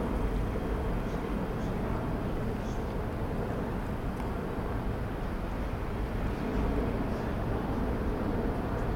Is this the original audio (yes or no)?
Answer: yes